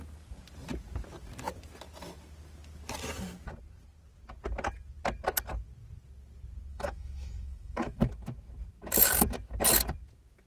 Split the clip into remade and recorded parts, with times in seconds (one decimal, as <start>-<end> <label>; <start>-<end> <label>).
0.0-6.7 recorded; 6.7-8.1 remade; 8.1-10.5 recorded